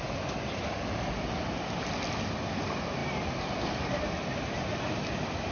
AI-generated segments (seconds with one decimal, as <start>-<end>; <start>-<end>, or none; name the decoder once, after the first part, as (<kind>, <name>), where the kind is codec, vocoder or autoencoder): none